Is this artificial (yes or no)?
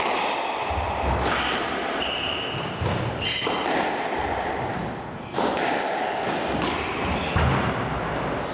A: no